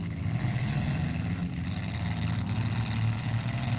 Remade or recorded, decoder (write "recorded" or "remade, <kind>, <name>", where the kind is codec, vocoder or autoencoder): recorded